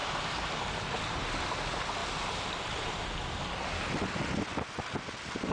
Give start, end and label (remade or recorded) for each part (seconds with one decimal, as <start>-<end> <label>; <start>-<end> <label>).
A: 0.0-5.5 recorded